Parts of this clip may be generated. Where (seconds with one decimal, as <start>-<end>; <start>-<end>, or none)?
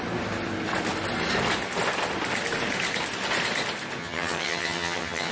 4.0-5.3